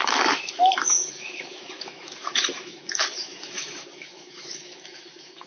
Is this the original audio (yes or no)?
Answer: no